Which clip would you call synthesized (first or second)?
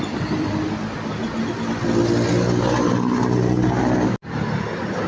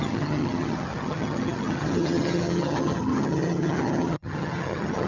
second